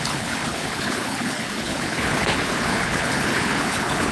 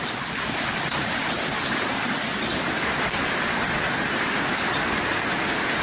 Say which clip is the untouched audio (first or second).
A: second